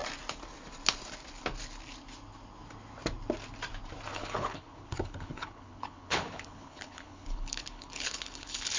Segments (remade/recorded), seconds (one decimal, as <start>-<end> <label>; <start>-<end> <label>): 0.0-4.1 recorded; 4.1-8.8 remade